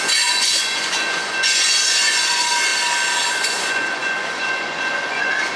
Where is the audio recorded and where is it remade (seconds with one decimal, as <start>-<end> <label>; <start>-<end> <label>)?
0.0-2.7 remade; 2.7-3.3 recorded; 3.3-5.6 remade